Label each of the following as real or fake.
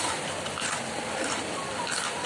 fake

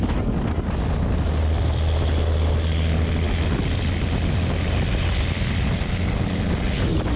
real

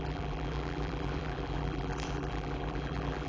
fake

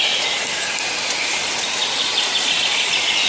real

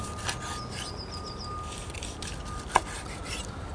real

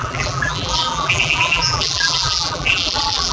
fake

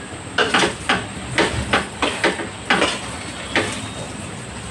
real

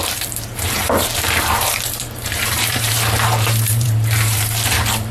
fake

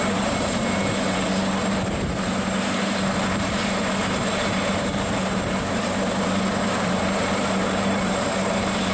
fake